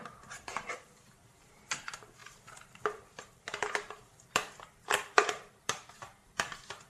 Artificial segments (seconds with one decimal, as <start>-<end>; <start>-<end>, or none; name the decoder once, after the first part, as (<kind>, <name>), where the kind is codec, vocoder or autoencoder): 0.0-6.9 (vocoder, BigVGAN v2)